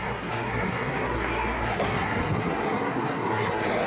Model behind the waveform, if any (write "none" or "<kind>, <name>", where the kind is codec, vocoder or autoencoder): codec, SNAC